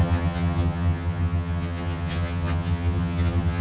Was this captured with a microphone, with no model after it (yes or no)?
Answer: no